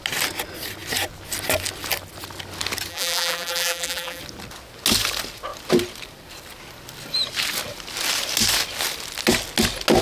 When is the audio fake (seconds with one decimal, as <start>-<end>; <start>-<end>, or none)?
2.9-4.2